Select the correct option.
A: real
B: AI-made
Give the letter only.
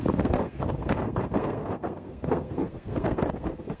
B